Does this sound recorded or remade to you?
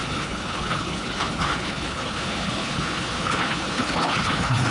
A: remade